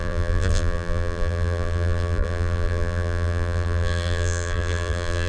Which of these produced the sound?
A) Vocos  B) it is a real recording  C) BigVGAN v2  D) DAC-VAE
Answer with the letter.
C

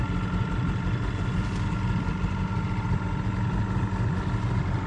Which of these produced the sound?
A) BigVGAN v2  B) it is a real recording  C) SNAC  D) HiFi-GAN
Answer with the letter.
B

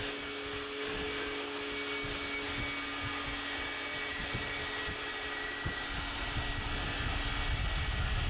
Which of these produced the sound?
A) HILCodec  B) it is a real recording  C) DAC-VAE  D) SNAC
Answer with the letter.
B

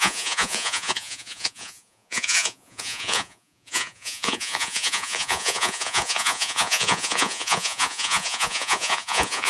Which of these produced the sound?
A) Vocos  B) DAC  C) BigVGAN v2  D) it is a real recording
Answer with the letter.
A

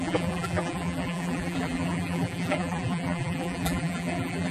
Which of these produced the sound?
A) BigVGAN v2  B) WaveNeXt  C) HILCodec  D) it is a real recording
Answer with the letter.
A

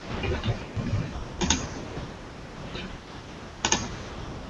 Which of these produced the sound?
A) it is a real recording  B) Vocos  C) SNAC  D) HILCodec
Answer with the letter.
A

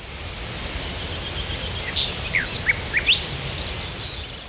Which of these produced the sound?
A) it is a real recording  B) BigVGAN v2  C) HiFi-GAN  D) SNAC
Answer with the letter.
A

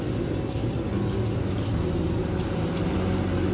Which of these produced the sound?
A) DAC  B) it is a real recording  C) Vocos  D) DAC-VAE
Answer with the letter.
B